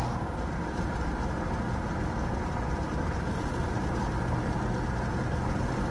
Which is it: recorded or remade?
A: recorded